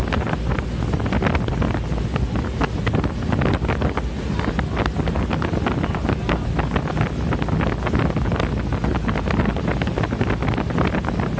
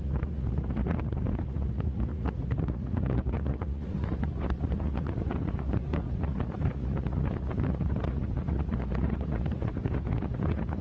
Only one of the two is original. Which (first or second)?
first